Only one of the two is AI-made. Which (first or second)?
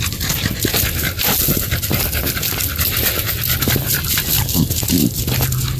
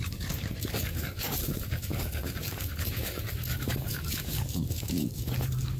second